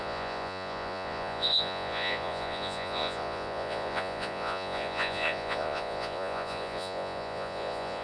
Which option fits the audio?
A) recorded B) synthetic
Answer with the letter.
B